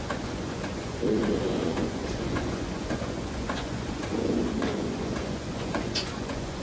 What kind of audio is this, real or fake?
fake